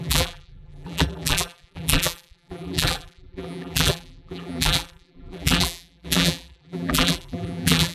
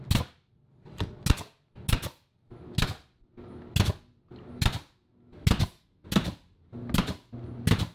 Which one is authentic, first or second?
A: second